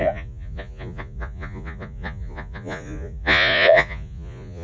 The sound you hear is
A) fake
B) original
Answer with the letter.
A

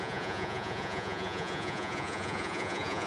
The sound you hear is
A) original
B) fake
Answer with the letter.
B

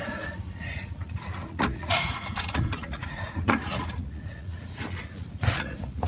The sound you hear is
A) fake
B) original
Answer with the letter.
A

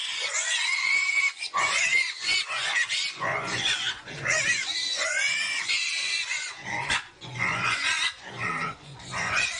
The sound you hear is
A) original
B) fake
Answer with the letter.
B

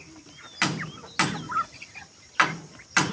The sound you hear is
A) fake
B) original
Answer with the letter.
B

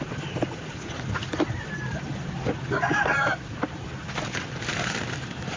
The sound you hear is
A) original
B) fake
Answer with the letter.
A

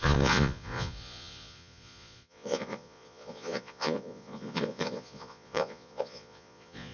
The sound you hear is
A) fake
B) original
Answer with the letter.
A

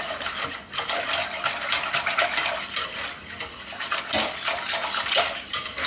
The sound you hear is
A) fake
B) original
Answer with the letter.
B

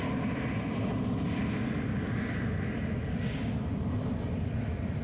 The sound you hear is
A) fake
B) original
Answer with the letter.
B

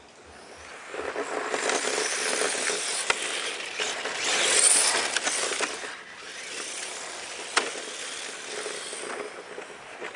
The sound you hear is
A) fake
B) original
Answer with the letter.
B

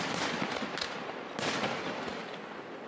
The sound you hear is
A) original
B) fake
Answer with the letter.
A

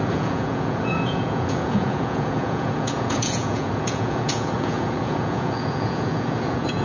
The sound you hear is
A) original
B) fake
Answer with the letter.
B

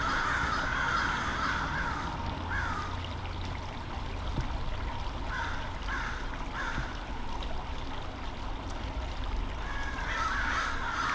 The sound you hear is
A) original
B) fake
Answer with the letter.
A